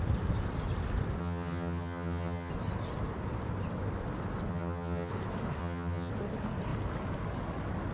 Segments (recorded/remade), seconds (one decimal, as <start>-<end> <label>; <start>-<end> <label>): 0.0-1.2 recorded; 1.2-2.5 remade; 2.5-4.5 recorded; 4.5-5.1 remade; 5.1-5.6 recorded; 5.6-6.1 remade; 6.1-7.9 recorded